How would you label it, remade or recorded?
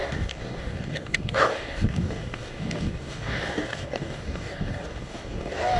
remade